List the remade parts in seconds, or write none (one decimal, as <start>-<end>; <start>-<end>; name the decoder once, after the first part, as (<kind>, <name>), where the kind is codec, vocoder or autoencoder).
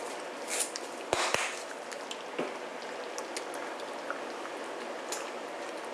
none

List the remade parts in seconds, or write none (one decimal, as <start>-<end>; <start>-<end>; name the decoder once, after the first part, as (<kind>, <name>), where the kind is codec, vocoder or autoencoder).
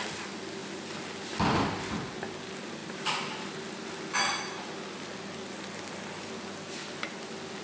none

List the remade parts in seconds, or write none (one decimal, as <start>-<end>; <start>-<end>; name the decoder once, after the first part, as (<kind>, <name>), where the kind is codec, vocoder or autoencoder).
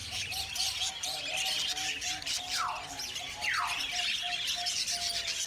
none